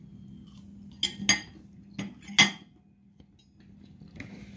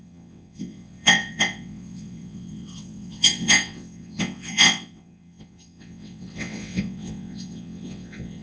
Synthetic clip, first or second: second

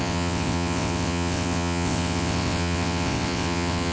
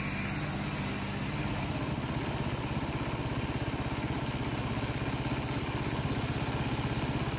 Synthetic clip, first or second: first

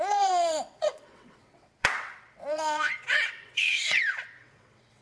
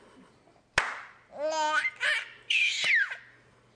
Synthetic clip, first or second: first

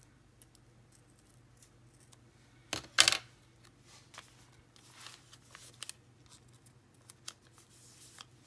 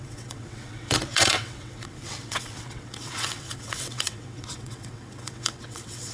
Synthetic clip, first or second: second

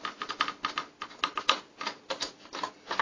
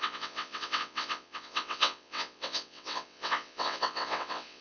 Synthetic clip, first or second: second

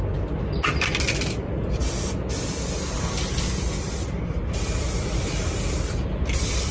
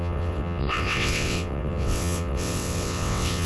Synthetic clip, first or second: second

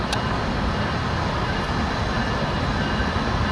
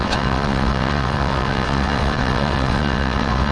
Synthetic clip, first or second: second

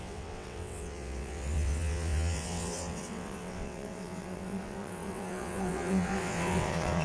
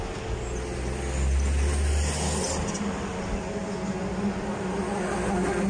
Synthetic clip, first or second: first